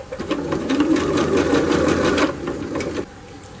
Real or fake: real